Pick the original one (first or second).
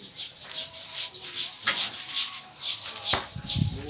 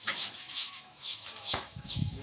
first